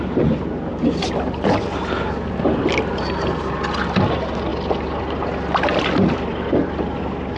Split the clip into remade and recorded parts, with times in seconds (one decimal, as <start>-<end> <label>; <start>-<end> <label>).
0.0-7.4 recorded